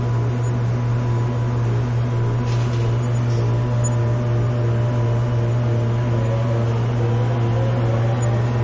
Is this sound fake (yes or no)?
no